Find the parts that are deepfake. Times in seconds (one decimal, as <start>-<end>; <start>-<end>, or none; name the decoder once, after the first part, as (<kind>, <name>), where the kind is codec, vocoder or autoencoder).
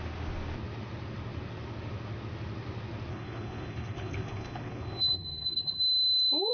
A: 3.1-5.8 (codec, HILCodec)